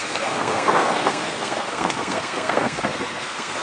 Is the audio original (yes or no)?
no